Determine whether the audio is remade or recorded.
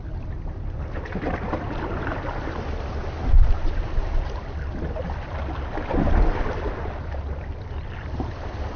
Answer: recorded